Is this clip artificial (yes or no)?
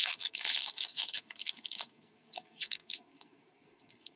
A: yes